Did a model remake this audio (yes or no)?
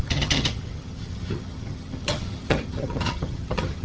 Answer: yes